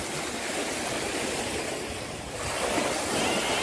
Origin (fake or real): real